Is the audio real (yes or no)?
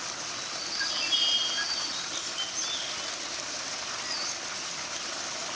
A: yes